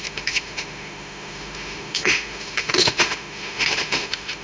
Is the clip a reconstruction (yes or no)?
yes